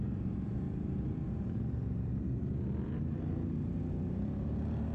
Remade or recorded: remade